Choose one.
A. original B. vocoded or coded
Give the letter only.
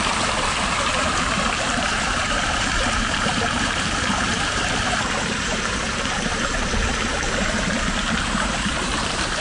B